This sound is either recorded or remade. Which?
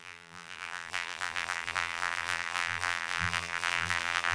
remade